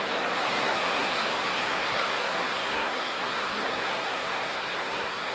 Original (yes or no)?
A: no